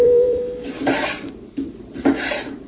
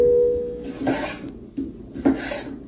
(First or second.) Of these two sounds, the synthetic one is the first